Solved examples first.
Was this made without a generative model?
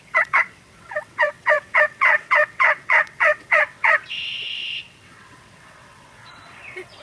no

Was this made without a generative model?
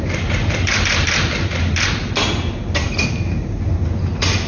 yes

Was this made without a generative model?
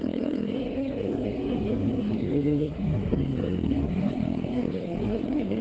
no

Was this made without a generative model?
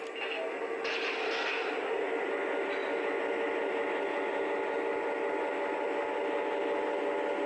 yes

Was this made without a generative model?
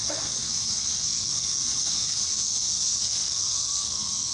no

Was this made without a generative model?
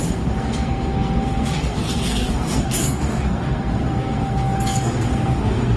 no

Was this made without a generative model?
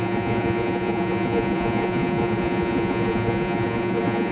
no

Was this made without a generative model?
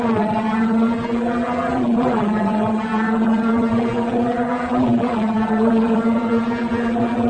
no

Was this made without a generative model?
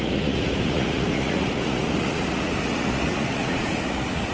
no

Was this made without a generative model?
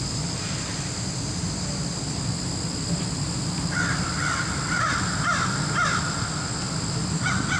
yes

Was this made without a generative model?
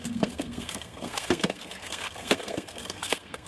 no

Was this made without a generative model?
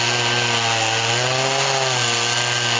yes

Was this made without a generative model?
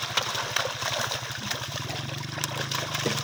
yes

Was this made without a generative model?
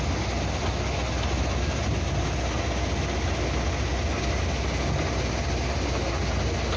yes